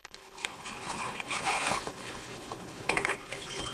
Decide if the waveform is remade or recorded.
remade